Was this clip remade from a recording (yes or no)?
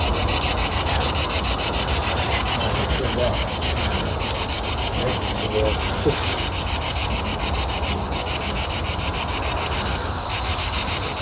no